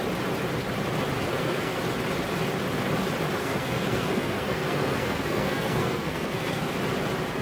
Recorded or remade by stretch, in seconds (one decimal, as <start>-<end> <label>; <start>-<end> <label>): 0.0-1.3 recorded; 1.3-1.8 remade; 1.8-3.4 recorded; 3.4-6.7 remade; 6.7-7.4 recorded